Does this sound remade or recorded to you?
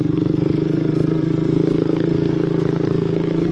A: remade